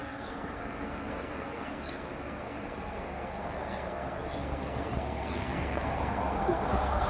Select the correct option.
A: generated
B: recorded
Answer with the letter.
A